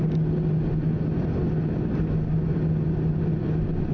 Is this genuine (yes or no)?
yes